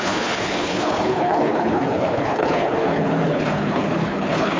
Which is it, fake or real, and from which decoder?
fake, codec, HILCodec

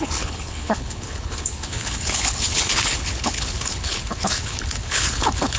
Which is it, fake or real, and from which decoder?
fake, codec, HILCodec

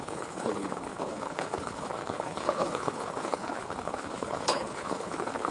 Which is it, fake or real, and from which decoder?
fake, codec, HILCodec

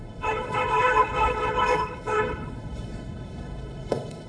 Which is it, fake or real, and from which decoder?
fake, codec, HILCodec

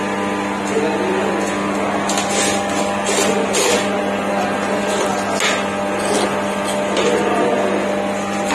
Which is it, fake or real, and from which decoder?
real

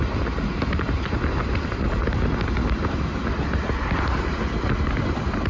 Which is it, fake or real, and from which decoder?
real